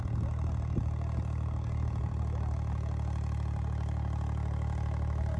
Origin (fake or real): real